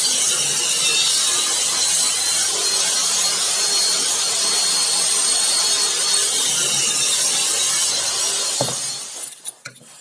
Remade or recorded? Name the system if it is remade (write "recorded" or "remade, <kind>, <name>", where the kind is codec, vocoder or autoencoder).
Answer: recorded